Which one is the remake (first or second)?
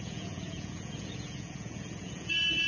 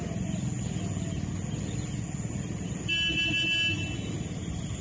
first